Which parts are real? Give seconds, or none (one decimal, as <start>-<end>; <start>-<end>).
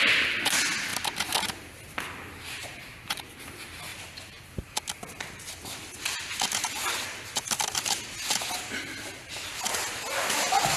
0.0-10.8